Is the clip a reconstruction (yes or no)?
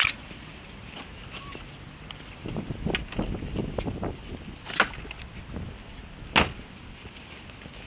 no